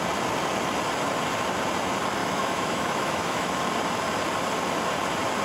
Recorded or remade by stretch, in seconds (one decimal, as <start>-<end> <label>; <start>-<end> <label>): 0.0-2.2 recorded; 2.2-3.6 remade; 3.6-5.4 recorded